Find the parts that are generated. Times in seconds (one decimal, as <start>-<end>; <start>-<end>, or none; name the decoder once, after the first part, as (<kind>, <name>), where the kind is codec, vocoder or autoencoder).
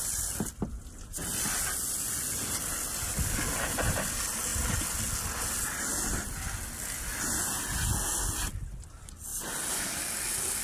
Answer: none